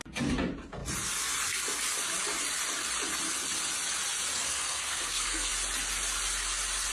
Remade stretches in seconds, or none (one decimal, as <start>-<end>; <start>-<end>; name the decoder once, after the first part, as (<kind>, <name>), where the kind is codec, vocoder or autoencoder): 4.3-5.5 (codec, SNAC)